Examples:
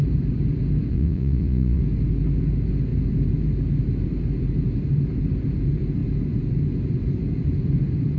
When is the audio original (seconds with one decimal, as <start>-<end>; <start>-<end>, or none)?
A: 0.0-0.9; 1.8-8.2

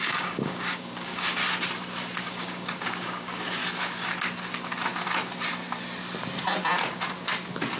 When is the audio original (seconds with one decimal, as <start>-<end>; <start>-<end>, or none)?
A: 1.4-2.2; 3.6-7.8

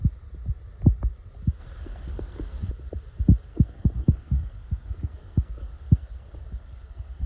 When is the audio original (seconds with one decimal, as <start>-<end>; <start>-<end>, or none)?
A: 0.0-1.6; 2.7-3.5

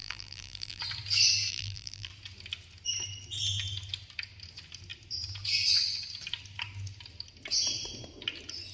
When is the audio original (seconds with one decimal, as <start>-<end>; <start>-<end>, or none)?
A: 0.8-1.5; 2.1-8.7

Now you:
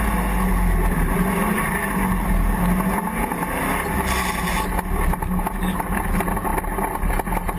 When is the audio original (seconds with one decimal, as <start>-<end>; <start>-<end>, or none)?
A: 0.0-7.6

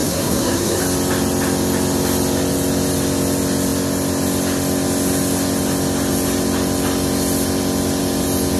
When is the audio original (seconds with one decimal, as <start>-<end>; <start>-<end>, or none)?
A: 0.8-8.6